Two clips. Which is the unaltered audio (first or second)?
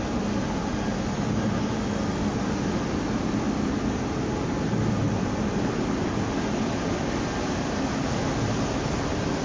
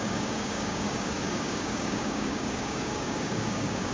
first